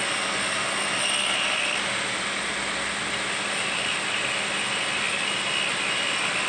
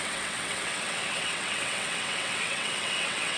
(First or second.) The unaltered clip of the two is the first